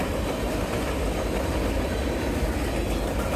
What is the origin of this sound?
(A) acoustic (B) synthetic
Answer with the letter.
A